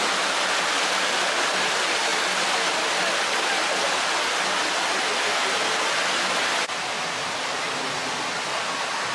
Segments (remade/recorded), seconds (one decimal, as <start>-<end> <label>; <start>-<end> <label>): 0.0-9.1 recorded